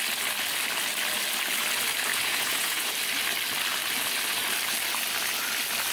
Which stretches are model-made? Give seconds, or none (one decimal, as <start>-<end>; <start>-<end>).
2.1-2.9